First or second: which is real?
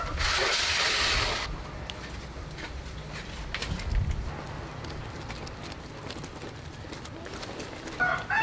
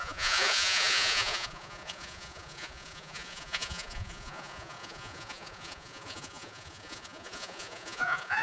first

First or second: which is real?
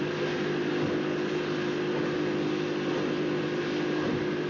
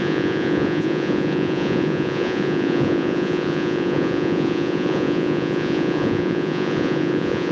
first